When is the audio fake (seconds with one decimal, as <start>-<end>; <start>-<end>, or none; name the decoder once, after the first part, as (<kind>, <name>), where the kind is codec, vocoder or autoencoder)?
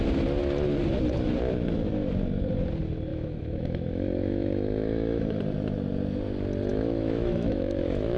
3.1-5.4 (autoencoder, DAC-VAE); 6.7-8.2